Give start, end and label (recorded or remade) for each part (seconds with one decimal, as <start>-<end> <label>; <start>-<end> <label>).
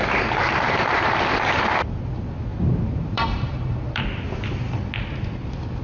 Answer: 0.0-2.5 recorded; 2.5-4.0 remade; 4.0-5.8 recorded